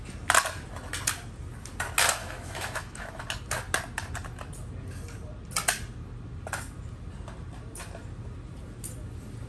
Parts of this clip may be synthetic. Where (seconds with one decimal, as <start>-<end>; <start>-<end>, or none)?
2.2-3.2